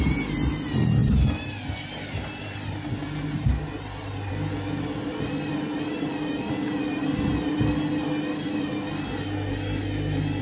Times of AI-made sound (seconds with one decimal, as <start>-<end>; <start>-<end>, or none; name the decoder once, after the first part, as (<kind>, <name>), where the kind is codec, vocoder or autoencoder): none